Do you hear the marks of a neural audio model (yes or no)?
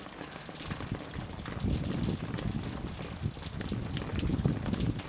no